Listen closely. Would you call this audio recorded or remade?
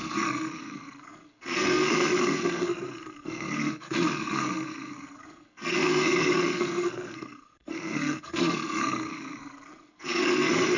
remade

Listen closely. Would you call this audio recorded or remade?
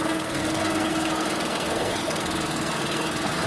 remade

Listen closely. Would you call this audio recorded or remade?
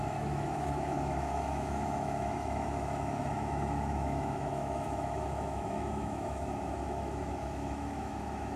remade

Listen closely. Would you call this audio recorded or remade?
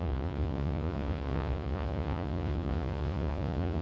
remade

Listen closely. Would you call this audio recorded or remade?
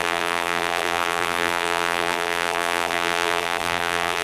remade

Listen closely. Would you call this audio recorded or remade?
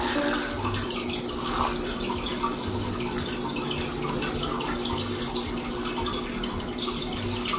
recorded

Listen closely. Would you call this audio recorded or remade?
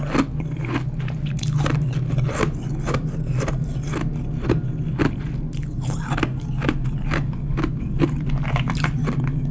recorded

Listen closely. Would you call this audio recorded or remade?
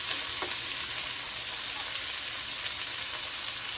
recorded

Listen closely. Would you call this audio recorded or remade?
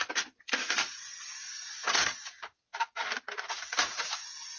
recorded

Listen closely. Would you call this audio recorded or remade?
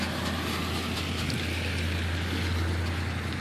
recorded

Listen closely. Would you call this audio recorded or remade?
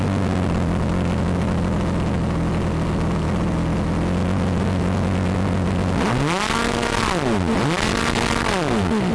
recorded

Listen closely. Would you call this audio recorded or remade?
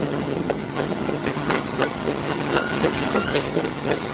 remade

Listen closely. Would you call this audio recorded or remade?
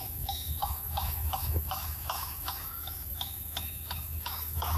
remade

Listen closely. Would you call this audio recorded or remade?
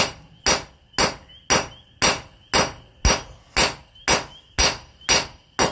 recorded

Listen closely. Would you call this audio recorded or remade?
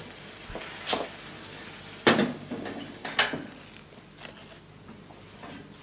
recorded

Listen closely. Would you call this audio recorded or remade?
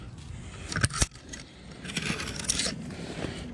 recorded